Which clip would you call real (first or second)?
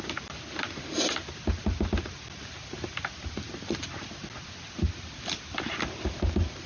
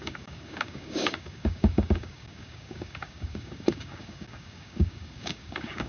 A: first